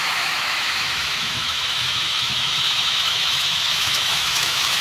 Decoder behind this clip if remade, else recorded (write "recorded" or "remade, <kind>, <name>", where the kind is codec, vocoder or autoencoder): remade, autoencoder, DAC-VAE